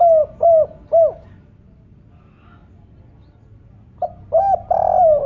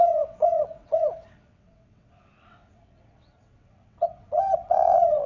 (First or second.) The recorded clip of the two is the first